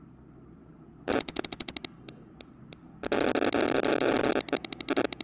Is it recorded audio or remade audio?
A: recorded